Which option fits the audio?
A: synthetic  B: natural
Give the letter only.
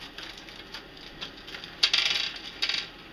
B